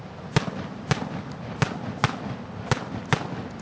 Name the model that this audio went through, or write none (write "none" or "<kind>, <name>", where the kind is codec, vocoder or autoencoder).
none